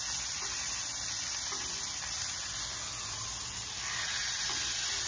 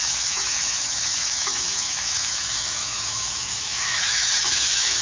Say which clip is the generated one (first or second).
second